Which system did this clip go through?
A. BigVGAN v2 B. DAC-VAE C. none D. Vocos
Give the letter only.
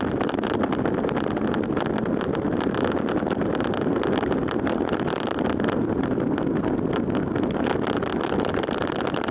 A